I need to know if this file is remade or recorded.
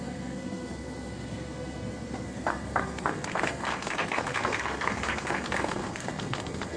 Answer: remade